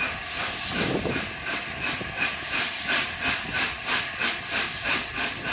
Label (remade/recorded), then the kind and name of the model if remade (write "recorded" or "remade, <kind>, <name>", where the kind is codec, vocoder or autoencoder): recorded